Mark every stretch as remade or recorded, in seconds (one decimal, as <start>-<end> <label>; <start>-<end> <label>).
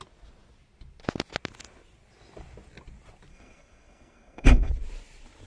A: 0.0-3.3 recorded; 3.3-4.7 remade; 4.7-5.5 recorded